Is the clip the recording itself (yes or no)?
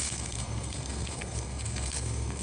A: no